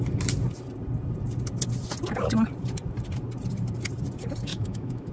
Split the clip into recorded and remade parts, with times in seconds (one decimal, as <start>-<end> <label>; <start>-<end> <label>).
0.0-4.5 recorded; 4.5-5.1 remade